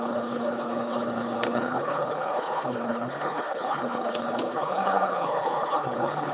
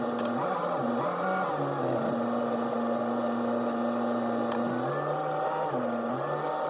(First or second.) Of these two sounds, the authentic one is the second